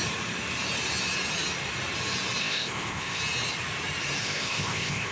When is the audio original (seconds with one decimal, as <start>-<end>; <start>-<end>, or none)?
0.0-2.4; 3.2-4.2